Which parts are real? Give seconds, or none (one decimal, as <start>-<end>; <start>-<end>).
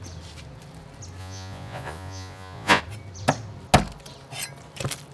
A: 0.0-1.2; 2.8-5.1